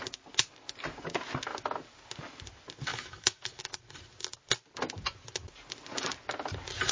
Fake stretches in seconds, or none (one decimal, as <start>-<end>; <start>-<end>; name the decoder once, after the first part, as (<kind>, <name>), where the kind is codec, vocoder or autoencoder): 2.9-3.6 (autoencoder, DAC-VAE)